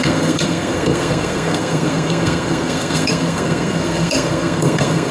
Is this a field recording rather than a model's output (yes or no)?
no